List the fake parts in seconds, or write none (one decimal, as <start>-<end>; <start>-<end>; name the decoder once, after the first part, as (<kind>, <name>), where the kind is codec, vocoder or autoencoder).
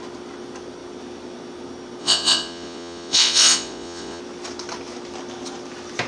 2.0-4.2 (vocoder, Vocos)